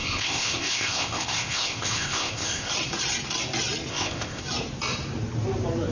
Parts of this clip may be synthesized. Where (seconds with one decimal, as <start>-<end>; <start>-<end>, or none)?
0.0-2.7; 3.9-4.4